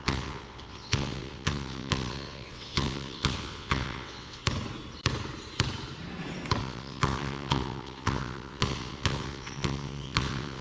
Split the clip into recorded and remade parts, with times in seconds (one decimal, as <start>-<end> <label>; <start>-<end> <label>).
0.0-4.4 remade; 4.4-6.6 recorded; 6.6-10.6 remade